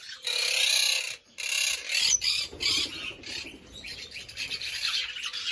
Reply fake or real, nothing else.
real